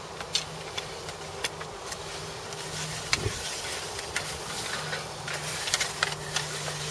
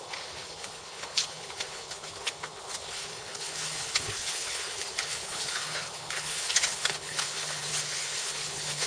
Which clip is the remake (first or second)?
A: second